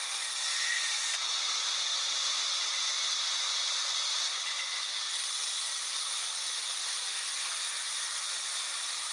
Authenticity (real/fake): real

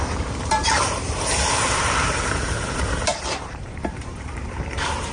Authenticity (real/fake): fake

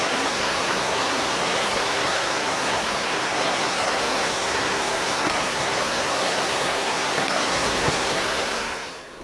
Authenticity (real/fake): fake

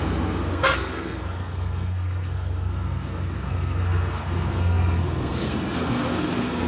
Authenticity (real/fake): fake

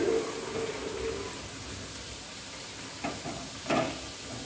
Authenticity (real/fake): real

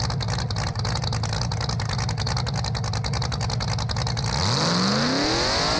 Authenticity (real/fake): real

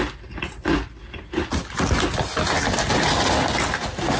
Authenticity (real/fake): real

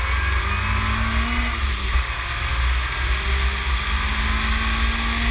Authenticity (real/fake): real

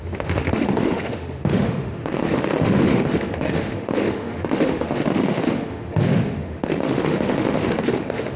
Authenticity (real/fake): fake